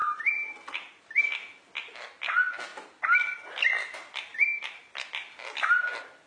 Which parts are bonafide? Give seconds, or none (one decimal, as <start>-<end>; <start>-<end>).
1.0-4.3; 4.8-6.3